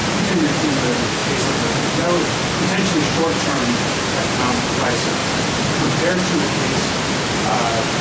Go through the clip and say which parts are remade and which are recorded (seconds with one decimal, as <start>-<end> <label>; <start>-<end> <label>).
0.0-0.6 remade; 0.6-8.0 recorded